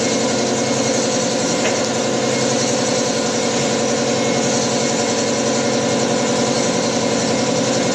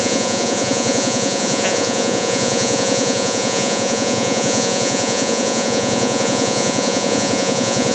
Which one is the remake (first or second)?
second